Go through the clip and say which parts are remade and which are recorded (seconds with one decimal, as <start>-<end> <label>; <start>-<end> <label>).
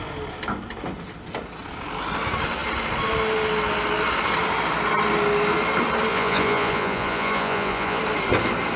0.0-6.1 recorded; 6.1-8.0 remade; 8.0-8.8 recorded